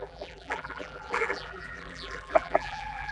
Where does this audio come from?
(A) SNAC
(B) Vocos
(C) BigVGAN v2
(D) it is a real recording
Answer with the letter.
C